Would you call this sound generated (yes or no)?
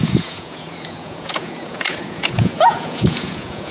yes